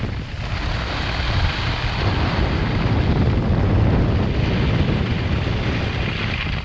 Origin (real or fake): real